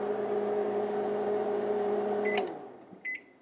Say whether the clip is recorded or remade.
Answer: remade